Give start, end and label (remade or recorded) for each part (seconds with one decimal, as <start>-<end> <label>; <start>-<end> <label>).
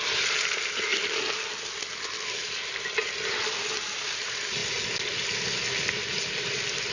0.0-6.9 recorded